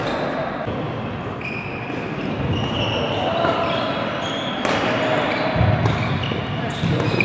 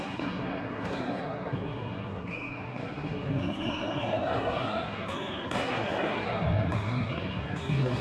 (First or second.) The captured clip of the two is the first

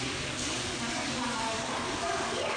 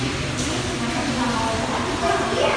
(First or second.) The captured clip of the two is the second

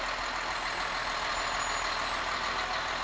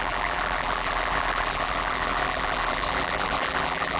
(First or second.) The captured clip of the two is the first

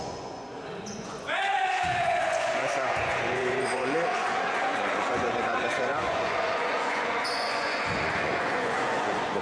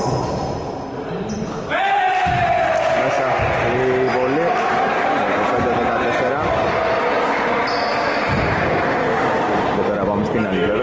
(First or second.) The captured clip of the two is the second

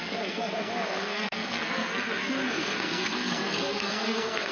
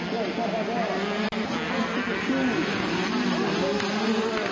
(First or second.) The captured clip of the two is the second